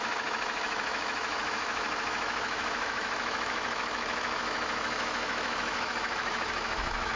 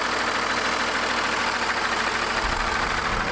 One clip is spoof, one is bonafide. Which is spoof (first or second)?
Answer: first